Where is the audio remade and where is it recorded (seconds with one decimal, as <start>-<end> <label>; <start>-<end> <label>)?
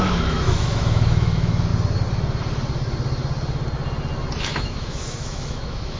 0.0-1.7 remade; 1.7-4.4 recorded; 4.4-6.0 remade